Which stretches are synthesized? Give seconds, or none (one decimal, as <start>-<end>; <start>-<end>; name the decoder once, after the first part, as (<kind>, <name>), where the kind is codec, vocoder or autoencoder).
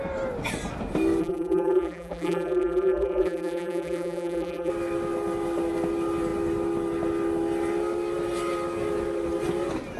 1.2-4.7 (vocoder, BigVGAN v2)